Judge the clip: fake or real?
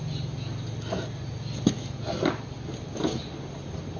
real